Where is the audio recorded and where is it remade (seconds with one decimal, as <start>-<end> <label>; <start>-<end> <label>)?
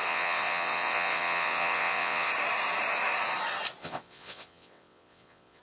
0.0-2.3 remade; 2.3-3.8 recorded; 3.8-5.6 remade